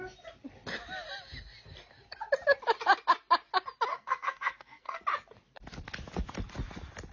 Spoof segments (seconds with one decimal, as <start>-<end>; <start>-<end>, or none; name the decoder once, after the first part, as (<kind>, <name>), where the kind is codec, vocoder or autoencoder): 3.9-5.0 (codec, SNAC)